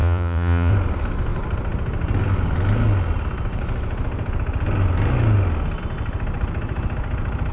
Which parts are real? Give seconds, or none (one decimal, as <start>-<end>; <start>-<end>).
0.7-7.5